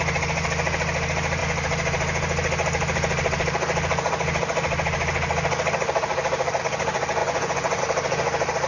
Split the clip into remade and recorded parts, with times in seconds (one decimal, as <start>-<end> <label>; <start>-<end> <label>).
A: 0.0-7.2 recorded; 7.2-7.8 remade; 7.8-8.7 recorded